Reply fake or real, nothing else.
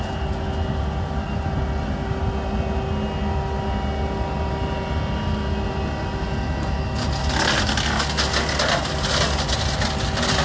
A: real